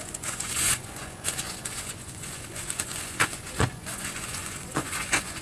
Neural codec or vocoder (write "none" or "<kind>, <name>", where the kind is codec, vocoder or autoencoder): vocoder, Vocos